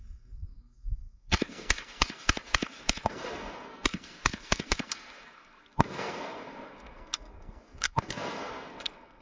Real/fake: fake